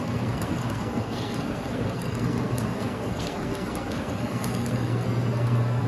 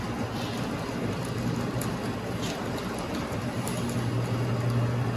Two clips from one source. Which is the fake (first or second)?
first